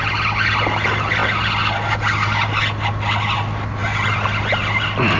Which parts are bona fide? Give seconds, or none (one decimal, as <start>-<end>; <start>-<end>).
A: 0.0-5.2